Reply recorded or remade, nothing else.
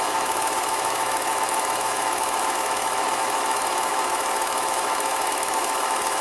remade